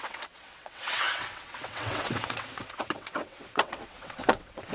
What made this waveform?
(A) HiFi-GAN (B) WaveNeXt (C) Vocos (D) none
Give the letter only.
B